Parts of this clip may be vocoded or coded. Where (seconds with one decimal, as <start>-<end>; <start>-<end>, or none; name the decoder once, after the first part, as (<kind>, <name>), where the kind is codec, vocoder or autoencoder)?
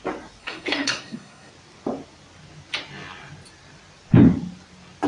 0.4-1.5 (codec, SNAC)